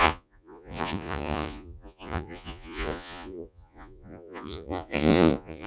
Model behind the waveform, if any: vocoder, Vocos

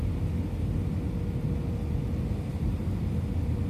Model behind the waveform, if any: none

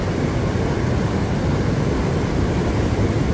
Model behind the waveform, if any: none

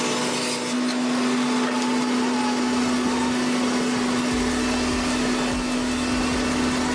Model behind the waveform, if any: none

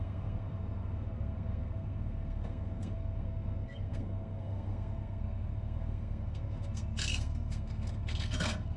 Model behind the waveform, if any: codec, SNAC